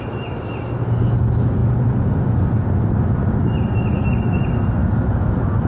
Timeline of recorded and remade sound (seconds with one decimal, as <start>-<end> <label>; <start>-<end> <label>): 0.0-5.7 recorded